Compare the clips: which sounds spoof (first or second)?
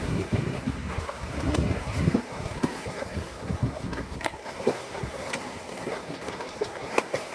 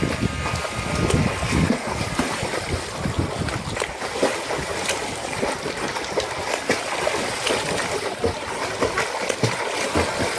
first